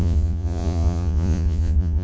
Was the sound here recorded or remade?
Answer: remade